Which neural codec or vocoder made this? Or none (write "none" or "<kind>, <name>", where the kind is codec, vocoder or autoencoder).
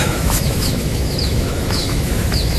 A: autoencoder, DAC-VAE